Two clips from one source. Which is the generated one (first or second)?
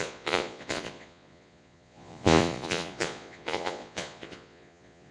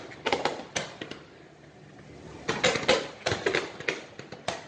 first